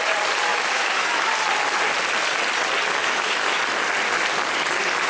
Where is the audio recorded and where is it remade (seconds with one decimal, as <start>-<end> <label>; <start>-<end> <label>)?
0.0-0.5 recorded; 0.5-1.3 remade; 1.3-3.0 recorded; 3.0-3.6 remade; 3.6-5.1 recorded